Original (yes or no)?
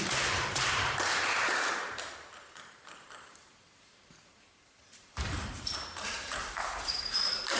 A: no